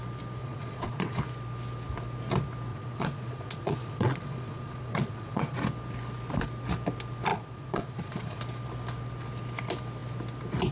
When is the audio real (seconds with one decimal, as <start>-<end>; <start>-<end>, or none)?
0.0-0.4; 1.2-2.7; 5.6-7.3; 8.4-10.7

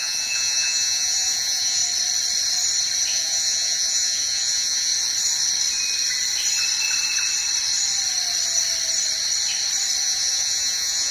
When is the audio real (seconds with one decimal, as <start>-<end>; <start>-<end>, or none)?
1.8-3.1; 4.9-10.0

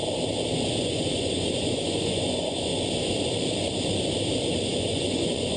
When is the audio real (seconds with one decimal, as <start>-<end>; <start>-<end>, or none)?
0.0-0.8; 2.7-4.8

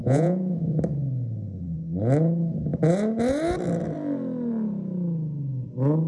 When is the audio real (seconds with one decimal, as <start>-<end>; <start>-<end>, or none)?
0.8-6.1

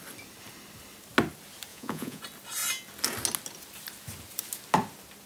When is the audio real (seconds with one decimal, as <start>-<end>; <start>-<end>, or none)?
0.0-1.7; 2.2-5.3

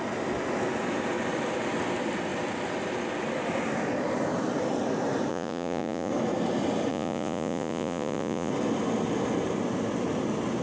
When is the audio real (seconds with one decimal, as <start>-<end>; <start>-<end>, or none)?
0.0-5.3; 6.1-6.9; 8.5-10.6

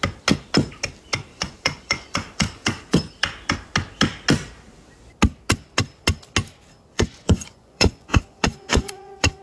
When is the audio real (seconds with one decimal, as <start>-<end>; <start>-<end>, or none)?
0.0-1.3; 3.1-6.9

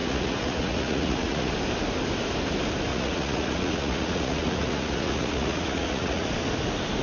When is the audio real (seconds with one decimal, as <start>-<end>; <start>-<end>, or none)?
1.5-2.9; 6.3-7.0